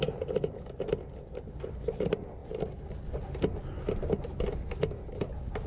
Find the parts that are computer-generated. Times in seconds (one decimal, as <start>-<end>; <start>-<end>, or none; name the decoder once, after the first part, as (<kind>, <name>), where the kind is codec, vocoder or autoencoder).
0.0-2.4 (vocoder, BigVGAN v2); 5.3-5.7